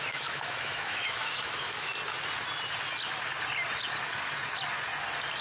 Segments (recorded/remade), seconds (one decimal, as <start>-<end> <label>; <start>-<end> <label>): 0.0-1.9 remade; 1.9-5.4 recorded